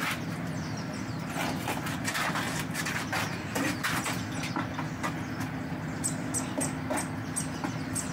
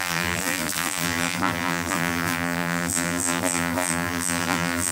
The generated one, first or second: second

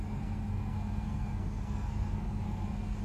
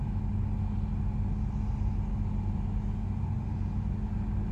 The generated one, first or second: first